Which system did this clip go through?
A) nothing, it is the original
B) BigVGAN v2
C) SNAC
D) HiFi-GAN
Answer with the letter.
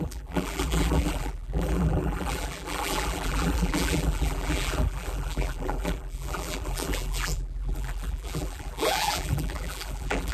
B